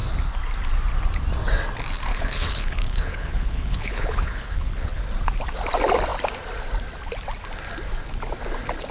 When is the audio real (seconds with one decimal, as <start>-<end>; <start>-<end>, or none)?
0.0-2.1; 5.0-8.9